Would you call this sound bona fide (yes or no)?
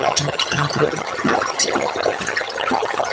no